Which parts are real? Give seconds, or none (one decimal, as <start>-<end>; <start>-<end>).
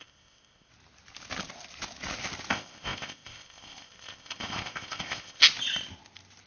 0.7-2.5; 5.4-6.5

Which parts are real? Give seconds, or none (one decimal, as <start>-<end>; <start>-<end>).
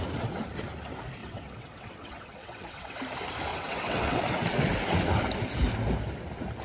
0.0-1.2; 3.0-3.5; 4.2-6.6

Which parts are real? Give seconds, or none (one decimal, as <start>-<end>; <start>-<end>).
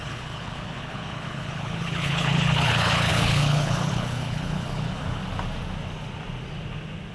5.2-7.1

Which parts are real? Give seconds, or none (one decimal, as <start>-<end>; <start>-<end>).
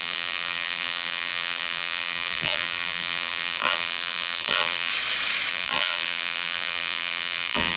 4.9-5.5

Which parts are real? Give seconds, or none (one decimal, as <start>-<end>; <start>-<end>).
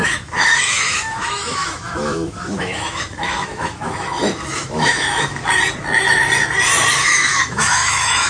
5.4-6.9